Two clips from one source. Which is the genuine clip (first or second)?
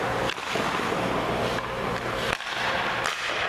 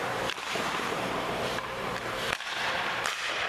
first